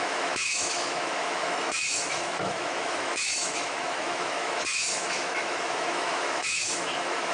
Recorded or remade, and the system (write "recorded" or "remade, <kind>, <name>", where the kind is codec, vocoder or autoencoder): remade, autoencoder, DAC-VAE